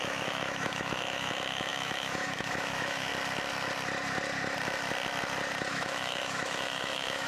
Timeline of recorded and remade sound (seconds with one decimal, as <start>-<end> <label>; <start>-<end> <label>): 0.0-3.1 remade; 3.1-5.7 recorded; 5.7-7.3 remade